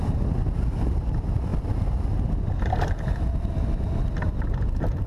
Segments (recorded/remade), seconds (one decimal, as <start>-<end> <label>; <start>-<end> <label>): 0.0-5.1 recorded